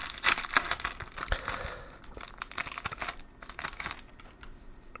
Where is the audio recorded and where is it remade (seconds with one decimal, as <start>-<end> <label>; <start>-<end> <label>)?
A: 0.0-3.0 recorded; 3.0-5.0 remade